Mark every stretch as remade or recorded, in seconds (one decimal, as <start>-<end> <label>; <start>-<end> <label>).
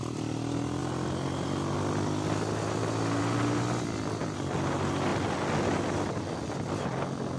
0.0-7.4 recorded